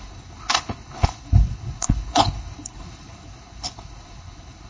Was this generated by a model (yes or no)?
yes